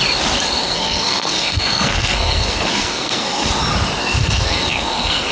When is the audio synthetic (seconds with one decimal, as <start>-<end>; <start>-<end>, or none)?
0.6-3.5; 4.0-5.3